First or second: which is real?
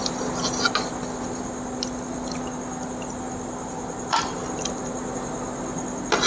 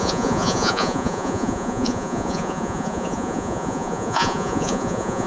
first